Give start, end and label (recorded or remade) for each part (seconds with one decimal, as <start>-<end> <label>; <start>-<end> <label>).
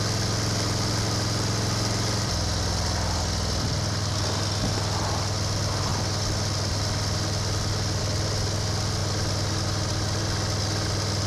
0.0-11.3 recorded